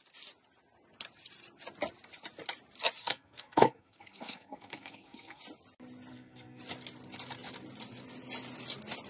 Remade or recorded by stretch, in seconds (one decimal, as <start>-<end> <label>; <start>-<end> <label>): 0.0-3.0 recorded; 3.0-5.4 remade; 5.4-6.1 recorded; 6.1-6.6 remade; 6.6-9.1 recorded